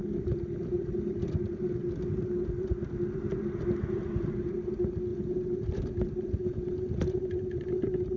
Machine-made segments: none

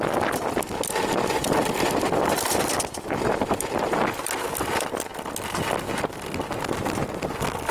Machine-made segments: none

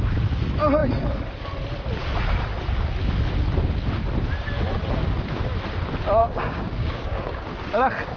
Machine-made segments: 6.2-7.6 (codec, DAC)

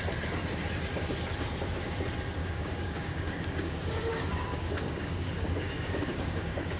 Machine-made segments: 2.4-6.8 (codec, DAC)

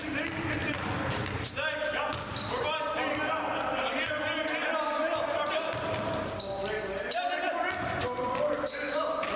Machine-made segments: none